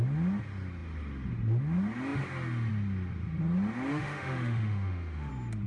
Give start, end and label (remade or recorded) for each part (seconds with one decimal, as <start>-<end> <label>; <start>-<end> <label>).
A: 0.0-3.9 recorded; 3.9-5.3 remade; 5.3-5.7 recorded